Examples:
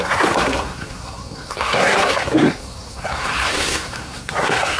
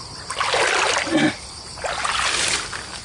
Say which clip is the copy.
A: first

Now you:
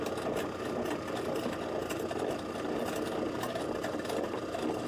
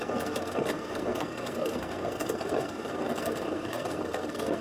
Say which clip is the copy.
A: second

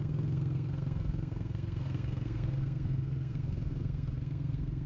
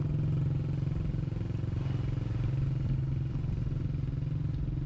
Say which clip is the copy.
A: first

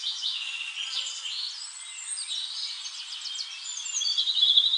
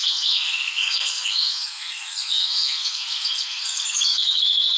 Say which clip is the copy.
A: second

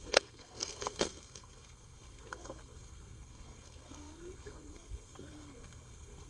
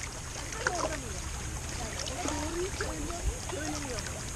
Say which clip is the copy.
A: first